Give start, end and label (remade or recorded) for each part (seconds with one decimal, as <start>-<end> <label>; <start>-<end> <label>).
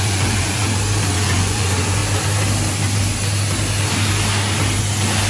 0.0-0.6 remade; 0.6-1.1 recorded; 1.1-2.0 remade; 2.0-5.3 recorded